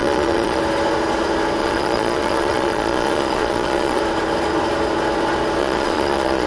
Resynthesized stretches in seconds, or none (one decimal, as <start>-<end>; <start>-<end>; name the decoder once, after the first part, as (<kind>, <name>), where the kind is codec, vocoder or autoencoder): 0.0-0.6 (vocoder, Vocos); 1.6-4.0; 5.6-6.5